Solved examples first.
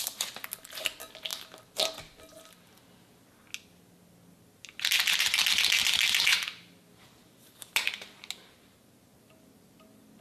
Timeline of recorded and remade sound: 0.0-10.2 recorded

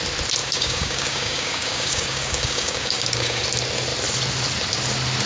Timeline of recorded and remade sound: 0.0-0.4 recorded; 0.4-3.4 remade; 3.4-5.3 recorded